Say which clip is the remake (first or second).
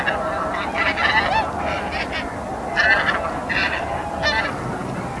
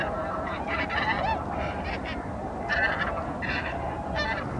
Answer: second